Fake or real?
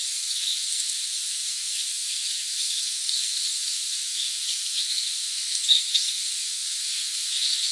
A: fake